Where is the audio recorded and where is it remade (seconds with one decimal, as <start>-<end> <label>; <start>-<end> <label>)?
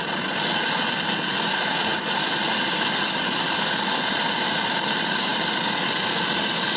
0.0-6.8 recorded